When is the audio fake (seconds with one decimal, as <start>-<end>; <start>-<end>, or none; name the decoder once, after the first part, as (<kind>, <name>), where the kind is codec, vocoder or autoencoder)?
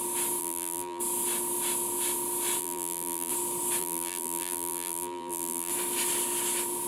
0.4-1.0 (vocoder, BigVGAN v2); 2.6-3.3; 3.8-5.7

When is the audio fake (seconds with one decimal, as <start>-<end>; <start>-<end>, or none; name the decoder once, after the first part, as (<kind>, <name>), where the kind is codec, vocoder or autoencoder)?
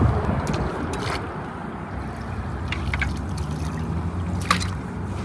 none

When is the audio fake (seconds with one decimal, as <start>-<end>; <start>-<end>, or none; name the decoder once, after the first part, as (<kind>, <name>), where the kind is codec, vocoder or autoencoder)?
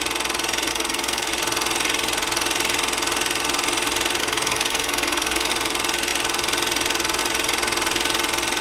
0.7-1.3 (codec, SNAC); 4.2-5.5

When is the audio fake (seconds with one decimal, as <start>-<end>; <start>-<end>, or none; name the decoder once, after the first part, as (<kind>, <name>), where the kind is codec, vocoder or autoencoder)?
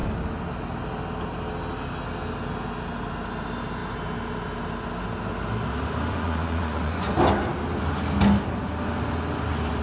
6.1-7.1 (vocoder, Vocos)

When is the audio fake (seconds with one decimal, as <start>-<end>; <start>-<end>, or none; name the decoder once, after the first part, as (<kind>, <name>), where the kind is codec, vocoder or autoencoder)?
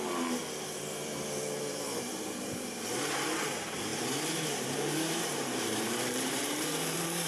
0.0-0.4 (vocoder, BigVGAN v2); 1.6-7.3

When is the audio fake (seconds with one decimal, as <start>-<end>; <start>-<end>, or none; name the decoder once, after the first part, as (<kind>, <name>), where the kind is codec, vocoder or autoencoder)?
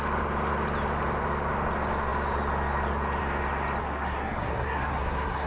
3.8-5.5 (codec, SNAC)